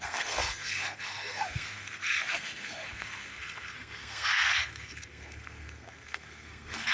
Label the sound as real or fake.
fake